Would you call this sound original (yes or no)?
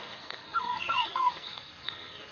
no